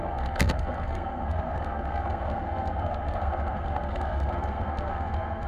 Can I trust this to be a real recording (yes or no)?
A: no